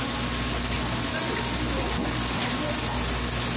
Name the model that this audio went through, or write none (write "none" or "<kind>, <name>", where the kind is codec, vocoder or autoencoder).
none